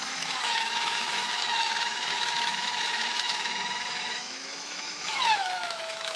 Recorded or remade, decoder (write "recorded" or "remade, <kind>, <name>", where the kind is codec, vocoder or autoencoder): remade, autoencoder, DAC-VAE